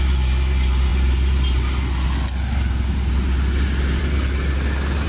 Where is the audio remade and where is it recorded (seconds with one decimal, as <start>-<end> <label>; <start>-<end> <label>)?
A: 0.0-5.1 recorded